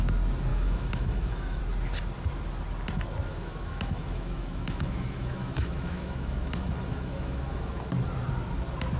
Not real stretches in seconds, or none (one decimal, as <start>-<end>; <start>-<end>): 0.5-1.6; 3.3-7.8